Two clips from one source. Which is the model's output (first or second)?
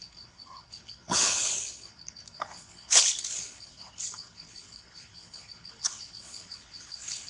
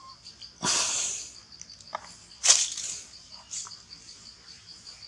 first